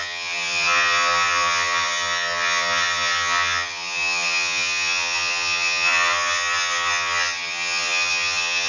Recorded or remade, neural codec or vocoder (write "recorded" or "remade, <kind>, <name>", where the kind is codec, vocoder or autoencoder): remade, vocoder, HiFi-GAN